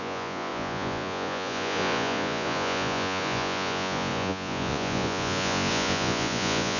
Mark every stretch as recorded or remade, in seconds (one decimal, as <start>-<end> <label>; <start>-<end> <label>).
0.0-6.8 remade